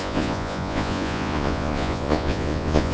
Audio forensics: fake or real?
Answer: fake